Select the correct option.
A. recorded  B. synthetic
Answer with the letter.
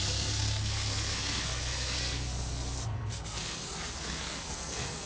B